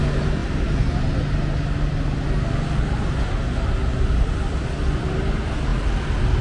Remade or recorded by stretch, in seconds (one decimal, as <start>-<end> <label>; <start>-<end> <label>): 0.0-6.4 recorded